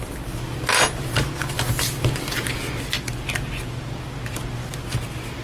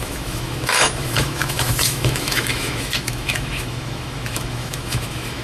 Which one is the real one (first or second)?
first